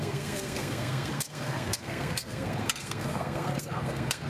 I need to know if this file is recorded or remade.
remade